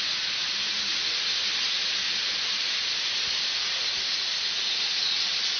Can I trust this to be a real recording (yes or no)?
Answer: yes